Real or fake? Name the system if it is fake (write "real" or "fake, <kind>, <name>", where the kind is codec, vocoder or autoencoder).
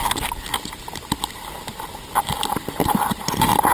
real